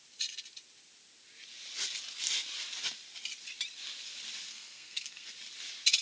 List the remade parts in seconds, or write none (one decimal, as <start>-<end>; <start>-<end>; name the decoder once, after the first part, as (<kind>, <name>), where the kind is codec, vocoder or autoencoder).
4.5-5.3 (codec, SNAC)